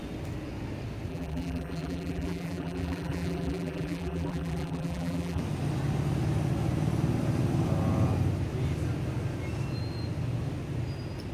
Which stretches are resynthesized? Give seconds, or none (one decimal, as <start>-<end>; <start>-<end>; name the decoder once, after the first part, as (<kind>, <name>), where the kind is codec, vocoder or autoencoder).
1.1-5.4 (vocoder, BigVGAN v2)